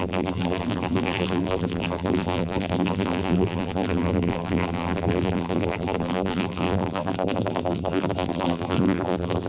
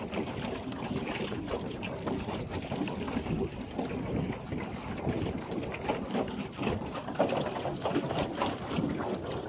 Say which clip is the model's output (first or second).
first